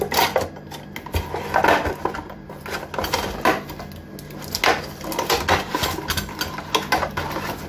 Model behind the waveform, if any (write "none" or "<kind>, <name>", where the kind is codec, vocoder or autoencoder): none